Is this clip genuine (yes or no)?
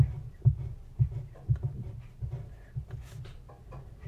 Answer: yes